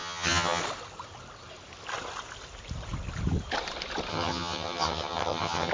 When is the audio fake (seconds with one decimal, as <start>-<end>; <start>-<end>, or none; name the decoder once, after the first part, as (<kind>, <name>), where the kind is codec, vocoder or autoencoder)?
0.0-0.6 (vocoder, HiFi-GAN); 4.1-5.7